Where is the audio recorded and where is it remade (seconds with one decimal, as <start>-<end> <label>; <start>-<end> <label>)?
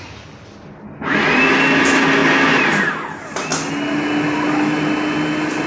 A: 0.0-5.7 recorded